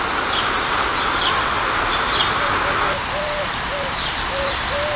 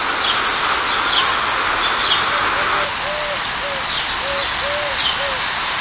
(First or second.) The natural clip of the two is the second